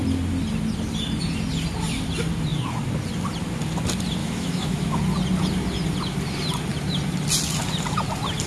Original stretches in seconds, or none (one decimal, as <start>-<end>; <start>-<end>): 0.0-4.2; 5.0-8.5